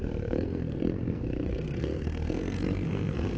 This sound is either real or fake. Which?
fake